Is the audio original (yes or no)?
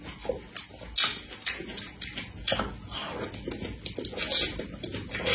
yes